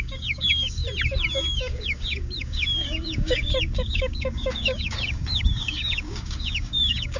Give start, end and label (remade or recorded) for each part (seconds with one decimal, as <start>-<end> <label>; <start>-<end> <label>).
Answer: 0.0-0.8 remade; 0.8-1.3 recorded; 1.3-7.2 remade